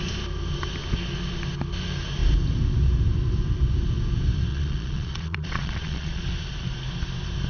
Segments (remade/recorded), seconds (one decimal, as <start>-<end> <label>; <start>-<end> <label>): 0.0-4.5 recorded; 4.5-6.2 remade; 6.2-7.5 recorded